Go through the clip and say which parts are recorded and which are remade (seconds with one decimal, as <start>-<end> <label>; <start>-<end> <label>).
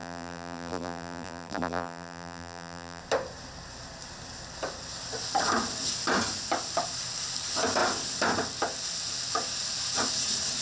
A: 0.0-3.0 remade; 3.0-10.6 recorded